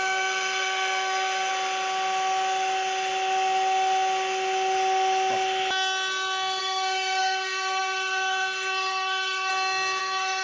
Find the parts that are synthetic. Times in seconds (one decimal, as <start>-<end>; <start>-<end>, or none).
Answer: 0.0-1.5; 6.6-9.5; 10.0-10.4